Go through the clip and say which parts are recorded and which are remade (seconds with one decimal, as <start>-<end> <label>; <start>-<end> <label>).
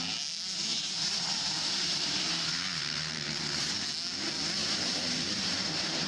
0.0-0.7 recorded; 0.7-3.7 remade; 3.7-4.6 recorded; 4.6-6.1 remade